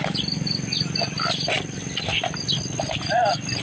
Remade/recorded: recorded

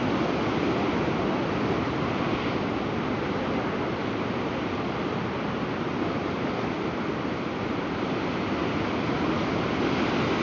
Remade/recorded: recorded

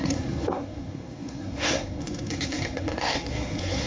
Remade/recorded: remade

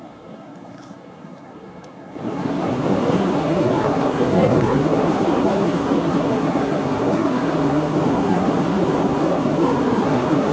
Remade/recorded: remade